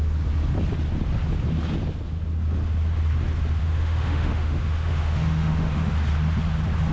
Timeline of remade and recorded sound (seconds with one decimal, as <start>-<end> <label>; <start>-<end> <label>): 0.0-3.6 recorded; 3.6-5.9 remade; 5.9-6.9 recorded